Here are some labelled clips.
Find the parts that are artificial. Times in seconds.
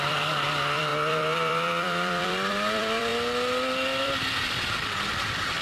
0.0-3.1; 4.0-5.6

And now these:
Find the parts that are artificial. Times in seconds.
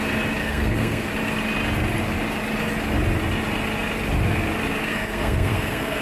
0.4-1.1; 4.8-6.0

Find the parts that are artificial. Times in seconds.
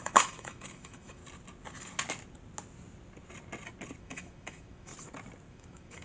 0.0-1.2; 4.0-4.9; 5.5-6.0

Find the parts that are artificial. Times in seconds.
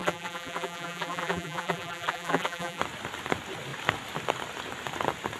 0.0-2.8